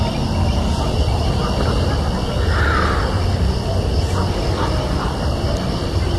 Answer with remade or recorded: recorded